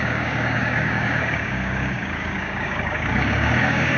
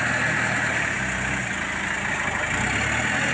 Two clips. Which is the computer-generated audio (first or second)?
first